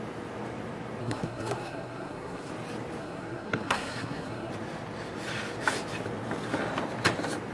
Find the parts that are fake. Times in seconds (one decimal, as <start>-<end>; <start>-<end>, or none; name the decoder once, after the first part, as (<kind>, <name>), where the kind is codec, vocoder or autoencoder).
1.0-2.5 (codec, SNAC); 3.0-4.5